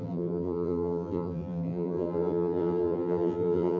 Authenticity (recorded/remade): remade